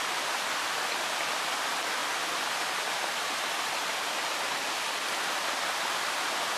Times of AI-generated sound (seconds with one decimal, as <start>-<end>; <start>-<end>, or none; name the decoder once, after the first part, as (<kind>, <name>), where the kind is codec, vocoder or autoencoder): none